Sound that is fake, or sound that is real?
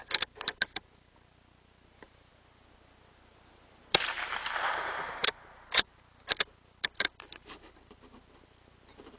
real